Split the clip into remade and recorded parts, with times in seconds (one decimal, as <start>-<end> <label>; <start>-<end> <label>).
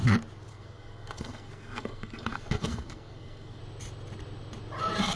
0.0-0.5 recorded; 0.5-3.6 remade; 3.6-5.2 recorded